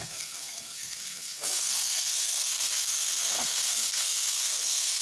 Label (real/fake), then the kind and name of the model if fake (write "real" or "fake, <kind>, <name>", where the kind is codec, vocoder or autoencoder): fake, codec, SNAC